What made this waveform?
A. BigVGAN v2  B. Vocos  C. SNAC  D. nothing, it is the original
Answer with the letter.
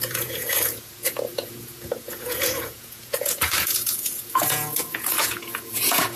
B